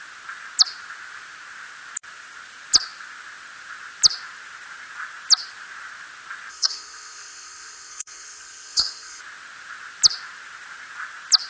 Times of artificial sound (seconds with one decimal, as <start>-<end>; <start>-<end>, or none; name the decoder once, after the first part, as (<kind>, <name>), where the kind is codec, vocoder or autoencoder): 6.5-9.2 (codec, SNAC)